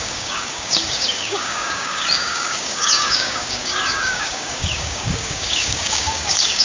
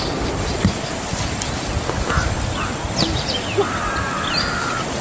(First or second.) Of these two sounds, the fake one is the first